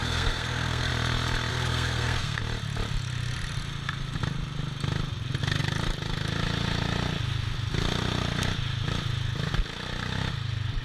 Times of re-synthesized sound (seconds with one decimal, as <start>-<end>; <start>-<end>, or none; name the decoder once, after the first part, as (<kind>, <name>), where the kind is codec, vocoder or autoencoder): 0.0-0.9 (codec, SNAC); 1.5-2.4